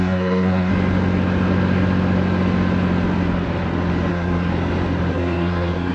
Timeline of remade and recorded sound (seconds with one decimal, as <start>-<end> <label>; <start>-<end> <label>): 0.0-0.7 remade; 0.7-4.1 recorded; 4.1-4.5 remade; 4.5-5.1 recorded; 5.1-5.9 remade

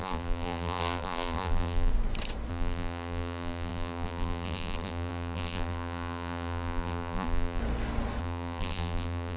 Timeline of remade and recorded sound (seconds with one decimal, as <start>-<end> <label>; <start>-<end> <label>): 0.0-1.9 remade; 1.9-2.5 recorded; 2.5-7.6 remade; 7.6-8.2 recorded; 8.2-9.4 remade